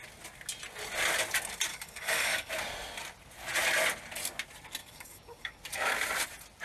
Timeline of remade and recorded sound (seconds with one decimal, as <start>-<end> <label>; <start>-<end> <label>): 0.0-1.7 recorded; 1.7-2.5 remade; 2.5-4.8 recorded; 4.8-5.6 remade; 5.6-6.6 recorded

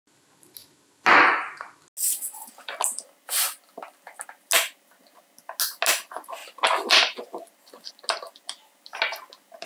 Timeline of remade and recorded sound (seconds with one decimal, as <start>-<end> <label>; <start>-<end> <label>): 0.0-9.7 recorded